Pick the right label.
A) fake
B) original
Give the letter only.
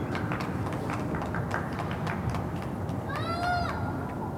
B